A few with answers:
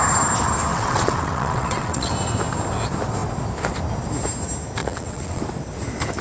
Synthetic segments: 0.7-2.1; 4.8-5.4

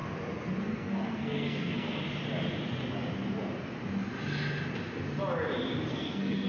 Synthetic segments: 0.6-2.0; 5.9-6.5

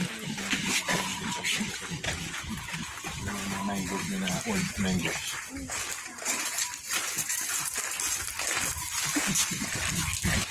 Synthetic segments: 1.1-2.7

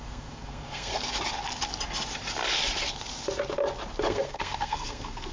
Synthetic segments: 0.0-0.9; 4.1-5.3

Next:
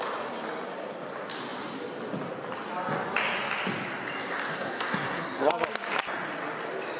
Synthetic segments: 4.5-5.5

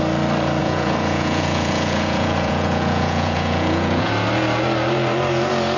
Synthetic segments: 0.6-4.1

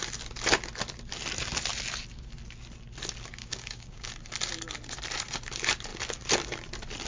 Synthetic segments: 3.4-4.1